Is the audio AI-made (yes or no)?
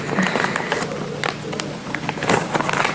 no